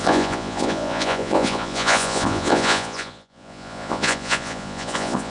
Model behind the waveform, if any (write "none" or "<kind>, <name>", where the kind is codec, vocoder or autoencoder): vocoder, Vocos